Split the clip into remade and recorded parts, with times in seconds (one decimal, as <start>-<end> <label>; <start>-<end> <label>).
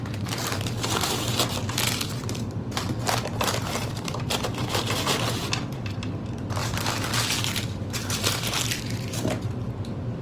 0.0-10.2 recorded